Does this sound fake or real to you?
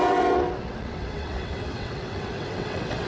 fake